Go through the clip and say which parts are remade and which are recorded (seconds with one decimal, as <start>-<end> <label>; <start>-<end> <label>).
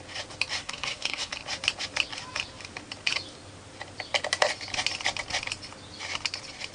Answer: 0.0-0.6 recorded; 0.6-1.3 remade; 1.3-6.7 recorded